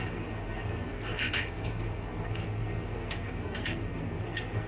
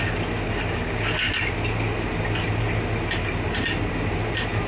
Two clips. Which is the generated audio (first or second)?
first